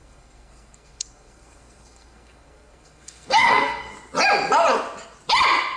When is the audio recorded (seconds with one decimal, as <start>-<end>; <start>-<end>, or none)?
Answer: 3.9-5.8